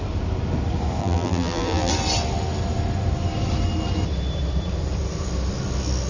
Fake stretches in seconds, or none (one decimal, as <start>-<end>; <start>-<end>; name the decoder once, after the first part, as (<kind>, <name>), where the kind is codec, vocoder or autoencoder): 1.0-1.9 (vocoder, BigVGAN v2)